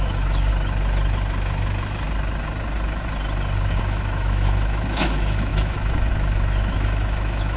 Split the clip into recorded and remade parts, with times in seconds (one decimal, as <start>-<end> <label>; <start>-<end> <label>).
0.0-0.5 remade; 0.5-3.7 recorded; 3.7-7.6 remade